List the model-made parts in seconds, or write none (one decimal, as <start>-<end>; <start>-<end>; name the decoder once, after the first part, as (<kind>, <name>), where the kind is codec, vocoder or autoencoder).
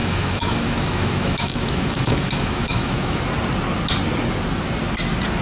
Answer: 0.0-3.2 (autoencoder, DAC-VAE)